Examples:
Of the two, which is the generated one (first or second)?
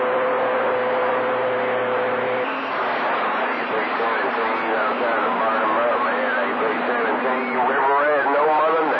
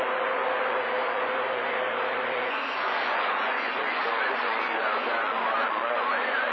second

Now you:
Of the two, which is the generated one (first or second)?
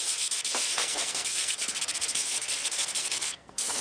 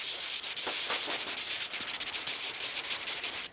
first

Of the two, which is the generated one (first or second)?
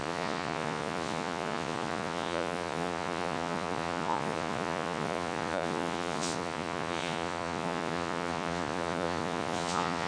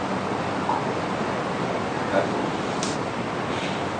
first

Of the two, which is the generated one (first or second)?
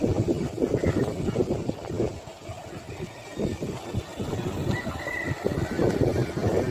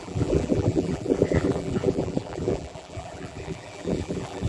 second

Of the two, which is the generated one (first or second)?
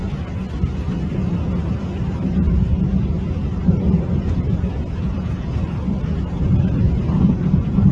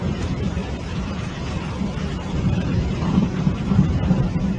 second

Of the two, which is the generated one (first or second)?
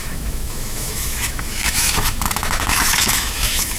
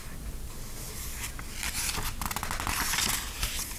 first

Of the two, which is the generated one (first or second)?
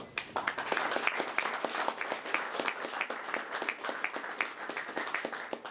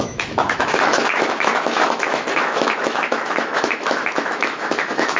second